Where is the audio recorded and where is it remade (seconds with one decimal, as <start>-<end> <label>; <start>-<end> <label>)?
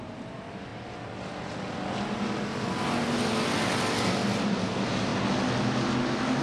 0.0-0.7 remade; 0.7-4.5 recorded; 4.5-5.1 remade; 5.1-6.4 recorded